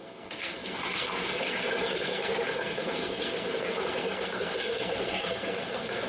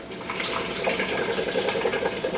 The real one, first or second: second